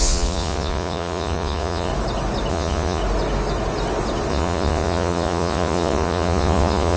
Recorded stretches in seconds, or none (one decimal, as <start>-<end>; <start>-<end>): 1.9-2.5; 3.0-4.3